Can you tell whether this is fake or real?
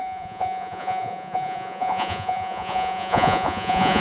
fake